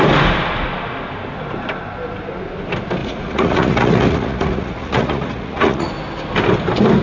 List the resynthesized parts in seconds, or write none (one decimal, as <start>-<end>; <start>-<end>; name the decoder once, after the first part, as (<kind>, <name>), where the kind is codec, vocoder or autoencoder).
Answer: 3.0-5.9 (vocoder, Vocos)